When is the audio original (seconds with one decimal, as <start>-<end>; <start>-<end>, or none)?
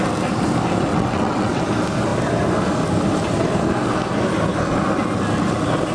0.0-0.9; 1.6-5.9